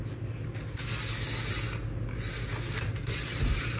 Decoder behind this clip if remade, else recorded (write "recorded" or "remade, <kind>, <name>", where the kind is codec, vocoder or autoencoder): recorded